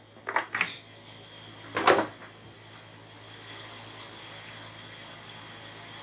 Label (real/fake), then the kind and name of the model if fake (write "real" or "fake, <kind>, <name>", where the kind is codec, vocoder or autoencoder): real